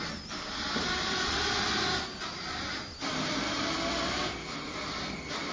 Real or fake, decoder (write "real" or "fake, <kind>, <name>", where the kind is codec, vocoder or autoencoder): real